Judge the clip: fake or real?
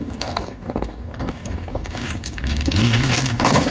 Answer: fake